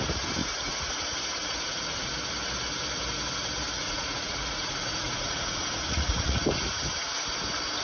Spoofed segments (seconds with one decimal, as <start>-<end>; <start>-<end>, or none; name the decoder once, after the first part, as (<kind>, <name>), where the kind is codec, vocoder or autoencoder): 0.4-0.9 (vocoder, Vocos); 1.4-2.1; 3.8-6.4